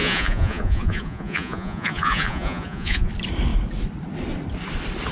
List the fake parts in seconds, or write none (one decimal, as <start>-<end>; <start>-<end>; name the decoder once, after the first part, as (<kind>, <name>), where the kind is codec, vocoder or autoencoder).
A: 0.0-3.1 (vocoder, Vocos)